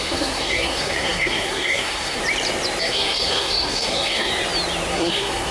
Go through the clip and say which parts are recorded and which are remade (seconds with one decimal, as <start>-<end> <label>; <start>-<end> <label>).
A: 0.0-2.2 remade; 2.2-2.8 recorded; 2.8-4.3 remade; 4.3-4.9 recorded; 4.9-5.5 remade